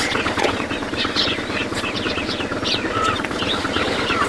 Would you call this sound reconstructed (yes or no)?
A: yes